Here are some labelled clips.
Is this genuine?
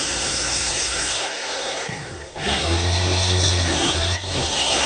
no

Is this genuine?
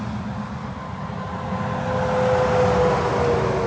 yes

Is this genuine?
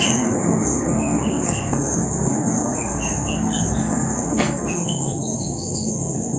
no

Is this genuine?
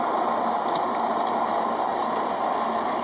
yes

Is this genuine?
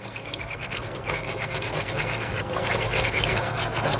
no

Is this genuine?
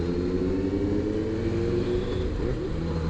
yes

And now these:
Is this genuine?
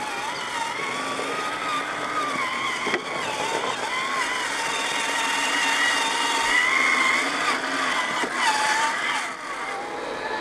yes